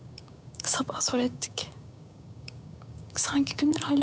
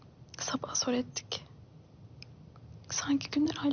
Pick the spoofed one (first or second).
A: first